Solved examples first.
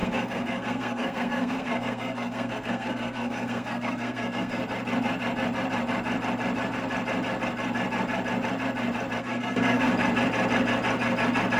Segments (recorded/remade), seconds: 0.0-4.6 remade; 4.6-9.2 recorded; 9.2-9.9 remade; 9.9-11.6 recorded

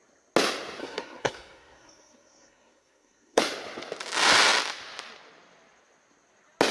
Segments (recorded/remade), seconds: 0.0-0.8 recorded; 0.8-3.4 remade; 3.4-6.7 recorded

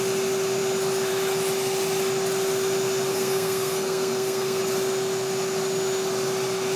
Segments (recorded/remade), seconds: 0.0-3.1 recorded; 3.1-4.6 remade; 4.6-6.8 recorded

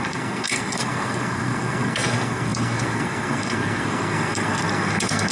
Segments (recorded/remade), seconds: 0.0-5.3 remade

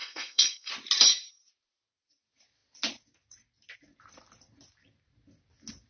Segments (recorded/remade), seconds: 0.0-0.7 remade; 0.7-5.9 recorded

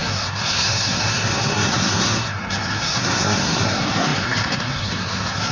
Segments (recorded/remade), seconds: 0.0-5.5 remade

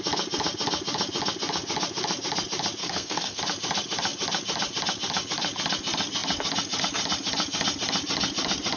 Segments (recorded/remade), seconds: 0.0-2.8 recorded; 2.8-3.4 remade; 3.4-8.8 recorded

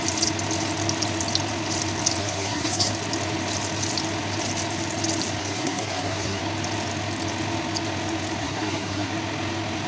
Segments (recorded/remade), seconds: 0.0-2.2 recorded; 2.2-2.9 remade; 2.9-5.4 recorded; 5.4-6.4 remade; 6.4-8.4 recorded; 8.4-9.1 remade; 9.1-9.9 recorded